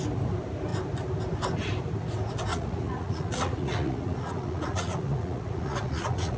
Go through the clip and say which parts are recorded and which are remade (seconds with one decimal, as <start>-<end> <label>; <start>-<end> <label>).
0.0-2.5 recorded; 2.5-6.4 remade